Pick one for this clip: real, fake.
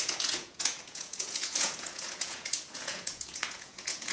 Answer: fake